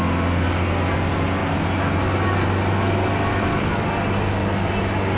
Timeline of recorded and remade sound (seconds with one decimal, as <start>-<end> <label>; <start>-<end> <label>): 0.0-5.2 recorded